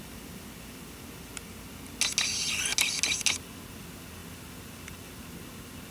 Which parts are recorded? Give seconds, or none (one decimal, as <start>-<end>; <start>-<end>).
0.0-5.9